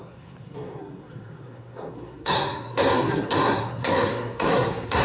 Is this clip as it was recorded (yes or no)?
no